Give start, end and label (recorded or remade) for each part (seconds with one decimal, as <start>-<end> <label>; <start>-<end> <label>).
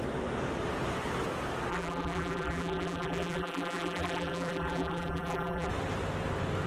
0.0-1.7 recorded; 1.7-5.7 remade; 5.7-6.7 recorded